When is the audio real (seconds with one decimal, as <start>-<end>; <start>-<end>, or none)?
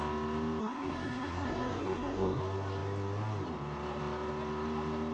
0.0-0.6; 2.4-5.1